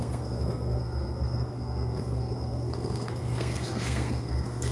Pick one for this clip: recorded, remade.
remade